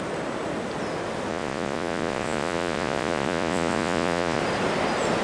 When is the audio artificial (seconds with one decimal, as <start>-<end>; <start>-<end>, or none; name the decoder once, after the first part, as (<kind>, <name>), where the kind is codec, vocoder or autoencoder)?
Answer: 1.3-4.4 (vocoder, Vocos)

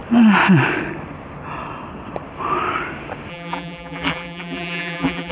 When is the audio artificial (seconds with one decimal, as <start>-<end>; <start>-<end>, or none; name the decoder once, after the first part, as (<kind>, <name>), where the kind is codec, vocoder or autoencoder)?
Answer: 3.3-5.3 (vocoder, BigVGAN v2)

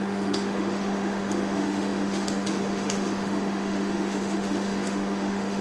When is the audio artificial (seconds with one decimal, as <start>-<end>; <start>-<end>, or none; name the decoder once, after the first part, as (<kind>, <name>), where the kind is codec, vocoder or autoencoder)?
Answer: 0.0-5.6 (autoencoder, DAC-VAE)

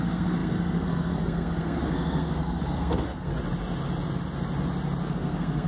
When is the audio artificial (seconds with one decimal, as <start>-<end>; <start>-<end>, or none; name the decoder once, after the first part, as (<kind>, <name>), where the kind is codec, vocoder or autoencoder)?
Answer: 0.0-3.3 (codec, SNAC); 5.1-5.7

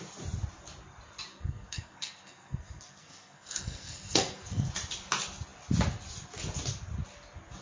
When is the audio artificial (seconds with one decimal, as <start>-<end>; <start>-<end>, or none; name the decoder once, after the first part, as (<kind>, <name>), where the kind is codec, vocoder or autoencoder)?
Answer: 1.3-4.7 (codec, SNAC)

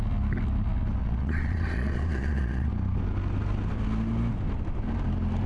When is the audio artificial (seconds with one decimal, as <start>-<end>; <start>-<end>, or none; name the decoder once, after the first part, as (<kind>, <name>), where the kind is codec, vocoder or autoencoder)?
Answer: 1.0-2.7 (vocoder, Vocos)

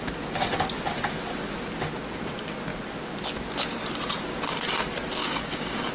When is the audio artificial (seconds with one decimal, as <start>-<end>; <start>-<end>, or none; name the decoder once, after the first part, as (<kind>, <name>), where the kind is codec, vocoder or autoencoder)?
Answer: 5.2-5.9 (codec, DAC)

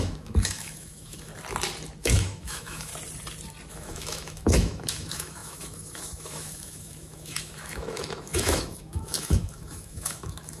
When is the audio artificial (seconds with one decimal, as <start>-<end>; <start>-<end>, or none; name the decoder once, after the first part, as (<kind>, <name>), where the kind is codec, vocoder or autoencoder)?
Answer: 0.0-1.3 (autoencoder, DAC-VAE); 2.0-2.9; 3.7-10.6